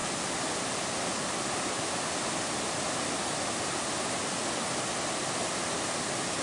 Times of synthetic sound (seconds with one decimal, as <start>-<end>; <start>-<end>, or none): none